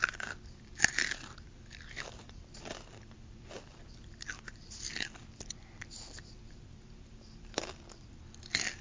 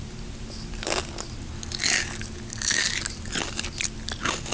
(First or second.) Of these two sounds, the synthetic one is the first